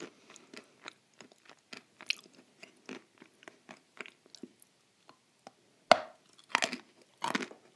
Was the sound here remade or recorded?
recorded